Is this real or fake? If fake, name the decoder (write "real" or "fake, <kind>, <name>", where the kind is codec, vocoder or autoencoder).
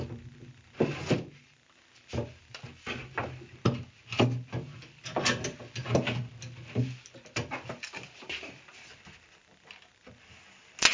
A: real